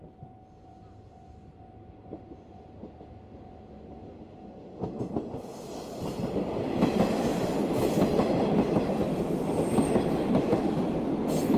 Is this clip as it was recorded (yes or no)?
yes